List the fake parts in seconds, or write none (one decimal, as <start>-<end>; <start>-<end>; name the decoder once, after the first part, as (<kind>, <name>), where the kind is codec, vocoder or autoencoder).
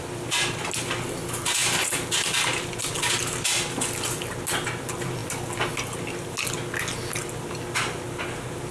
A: none